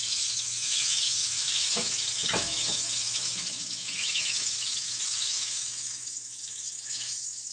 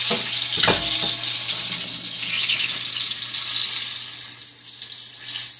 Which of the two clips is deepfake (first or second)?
first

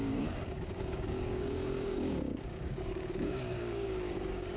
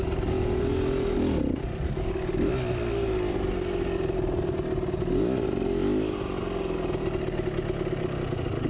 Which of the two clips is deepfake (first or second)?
first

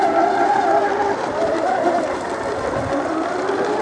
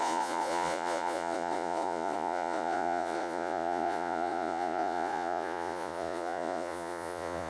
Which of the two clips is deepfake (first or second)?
second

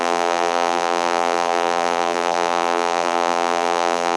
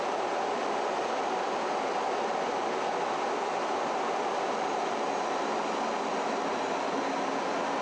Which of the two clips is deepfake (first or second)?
first